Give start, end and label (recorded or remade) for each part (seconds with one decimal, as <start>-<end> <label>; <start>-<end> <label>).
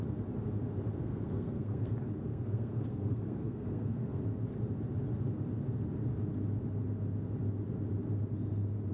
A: 0.0-1.0 recorded; 1.0-1.9 remade; 1.9-2.3 recorded; 2.3-4.2 remade; 4.2-8.9 recorded